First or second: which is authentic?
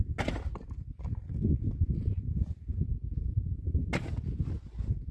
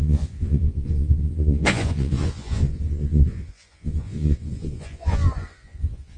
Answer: first